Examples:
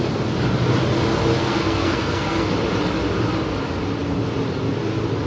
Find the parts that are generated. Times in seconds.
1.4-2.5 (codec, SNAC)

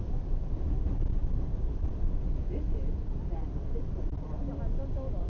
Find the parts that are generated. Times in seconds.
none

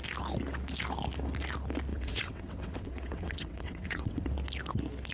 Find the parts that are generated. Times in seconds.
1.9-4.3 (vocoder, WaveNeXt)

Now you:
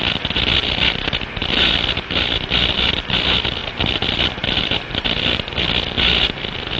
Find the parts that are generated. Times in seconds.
none

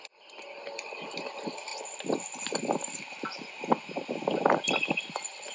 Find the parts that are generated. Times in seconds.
none

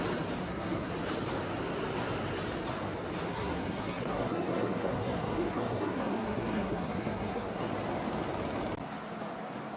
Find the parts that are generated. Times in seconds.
0.4-0.9 (codec, SNAC); 3.3-7.7